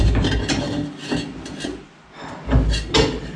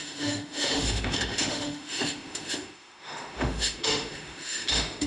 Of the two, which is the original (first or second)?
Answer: first